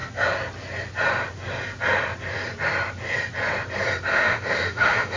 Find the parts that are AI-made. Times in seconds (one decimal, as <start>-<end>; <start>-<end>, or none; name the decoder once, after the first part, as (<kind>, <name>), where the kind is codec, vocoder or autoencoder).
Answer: 4.1-5.2 (autoencoder, DAC-VAE)